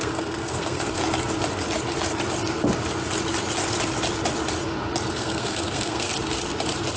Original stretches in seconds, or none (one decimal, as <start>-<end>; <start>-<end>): 1.0-5.1; 6.1-7.0